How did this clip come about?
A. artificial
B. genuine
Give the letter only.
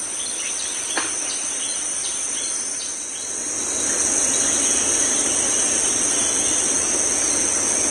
B